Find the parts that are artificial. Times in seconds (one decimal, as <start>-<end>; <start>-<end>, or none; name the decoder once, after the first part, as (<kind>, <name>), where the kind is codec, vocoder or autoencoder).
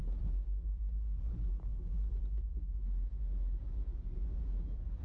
none